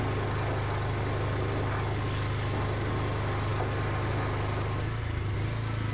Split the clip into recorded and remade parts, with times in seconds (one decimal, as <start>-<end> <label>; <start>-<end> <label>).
0.0-5.9 recorded